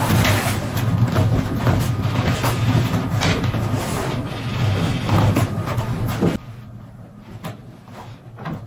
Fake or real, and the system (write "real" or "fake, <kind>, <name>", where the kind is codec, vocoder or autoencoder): real